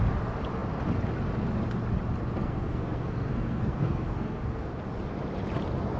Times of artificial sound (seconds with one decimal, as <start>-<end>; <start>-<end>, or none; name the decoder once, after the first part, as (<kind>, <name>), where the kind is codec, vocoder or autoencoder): 2.4-4.7 (codec, SNAC)